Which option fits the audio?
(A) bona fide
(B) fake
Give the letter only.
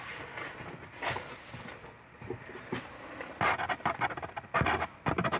A